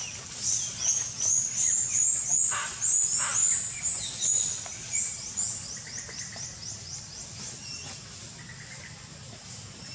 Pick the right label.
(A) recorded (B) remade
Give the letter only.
A